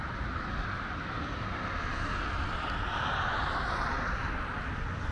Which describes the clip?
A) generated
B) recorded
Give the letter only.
B